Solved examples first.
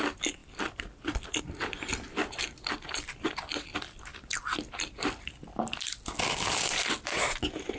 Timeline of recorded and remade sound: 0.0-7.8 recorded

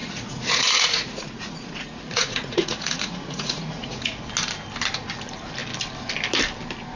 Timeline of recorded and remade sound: 0.0-4.2 remade; 4.2-7.0 recorded

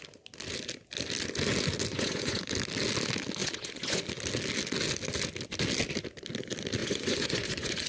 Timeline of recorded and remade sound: 0.0-1.9 recorded; 1.9-2.4 remade; 2.4-3.4 recorded; 3.4-4.0 remade; 4.0-6.8 recorded; 6.8-7.9 remade

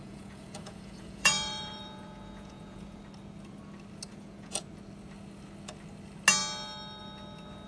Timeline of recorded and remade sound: 0.0-3.0 remade; 3.0-4.1 recorded; 4.1-4.6 remade; 4.6-7.7 recorded

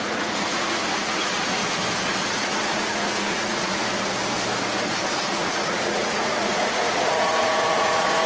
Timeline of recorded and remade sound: 0.0-1.6 remade; 1.6-2.2 recorded; 2.2-3.8 remade; 3.8-5.1 recorded; 5.1-8.3 remade